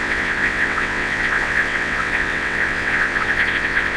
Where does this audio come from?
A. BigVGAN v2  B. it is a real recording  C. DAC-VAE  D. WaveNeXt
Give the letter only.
D